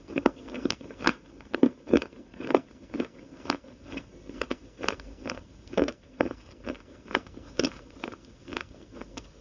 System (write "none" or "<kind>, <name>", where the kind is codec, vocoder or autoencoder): codec, SNAC